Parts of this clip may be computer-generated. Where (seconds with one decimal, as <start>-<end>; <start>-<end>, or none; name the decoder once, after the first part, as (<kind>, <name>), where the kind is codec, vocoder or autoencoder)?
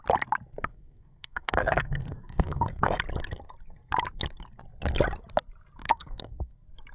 0.7-3.0 (codec, SNAC); 5.8-6.5